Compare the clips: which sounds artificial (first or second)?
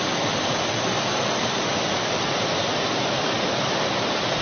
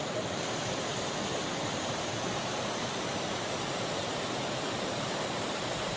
second